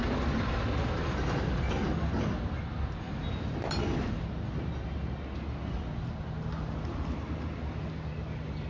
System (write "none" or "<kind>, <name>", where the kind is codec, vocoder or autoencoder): none